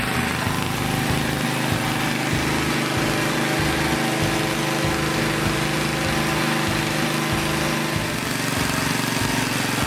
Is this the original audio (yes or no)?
yes